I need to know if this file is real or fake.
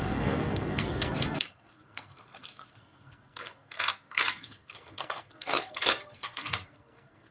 fake